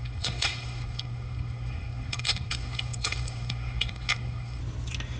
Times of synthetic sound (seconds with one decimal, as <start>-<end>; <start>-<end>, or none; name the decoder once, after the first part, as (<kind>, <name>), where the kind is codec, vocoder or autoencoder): 0.0-4.6 (codec, SNAC)